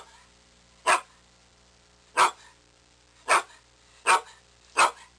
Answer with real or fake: real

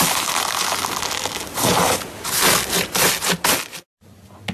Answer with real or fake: real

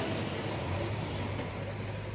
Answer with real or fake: real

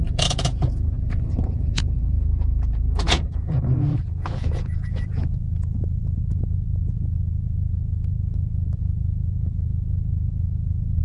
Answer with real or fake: fake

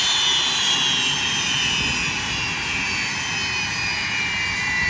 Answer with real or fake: real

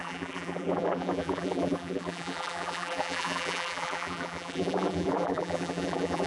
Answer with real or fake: fake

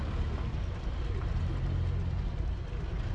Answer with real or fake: real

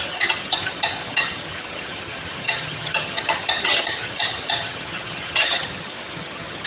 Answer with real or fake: fake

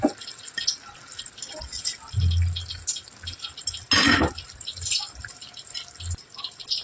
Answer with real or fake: real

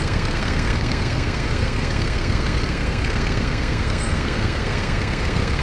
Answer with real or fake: fake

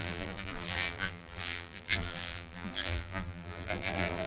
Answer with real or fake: fake